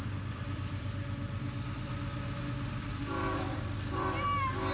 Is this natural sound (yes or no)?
no